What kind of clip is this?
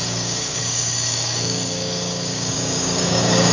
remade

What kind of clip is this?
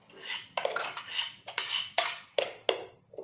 recorded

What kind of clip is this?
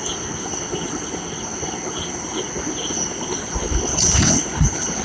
recorded